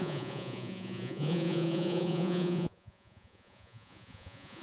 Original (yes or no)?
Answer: no